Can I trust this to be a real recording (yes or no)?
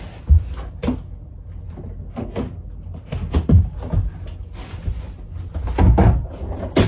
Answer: yes